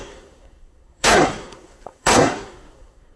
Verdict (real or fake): fake